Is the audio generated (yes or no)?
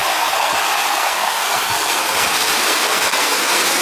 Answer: yes